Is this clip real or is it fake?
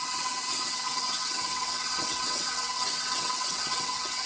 fake